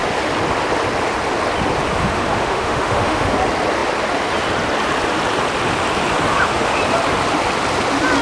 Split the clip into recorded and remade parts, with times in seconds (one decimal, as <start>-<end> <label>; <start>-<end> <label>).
0.0-2.0 recorded; 2.0-3.3 remade; 3.3-6.3 recorded; 6.3-6.8 remade; 6.8-8.2 recorded